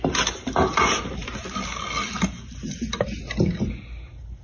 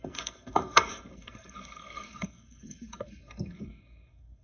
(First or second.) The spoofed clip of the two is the second